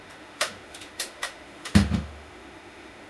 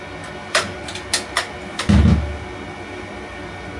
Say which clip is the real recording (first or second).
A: second